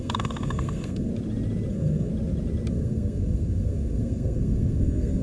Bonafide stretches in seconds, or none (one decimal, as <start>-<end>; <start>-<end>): 1.1-1.7; 2.1-2.7